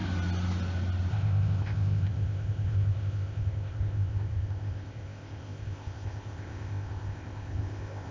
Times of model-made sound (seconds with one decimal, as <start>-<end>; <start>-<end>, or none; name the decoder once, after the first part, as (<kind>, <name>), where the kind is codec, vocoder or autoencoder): 1.1-8.1 (codec, ZipCodec)